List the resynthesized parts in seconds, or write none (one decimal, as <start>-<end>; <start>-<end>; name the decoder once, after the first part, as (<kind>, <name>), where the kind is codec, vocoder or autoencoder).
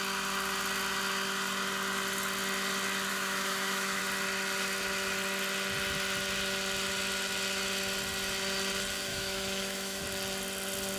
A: 3.1-4.0 (autoencoder, DAC-VAE); 9.1-10.0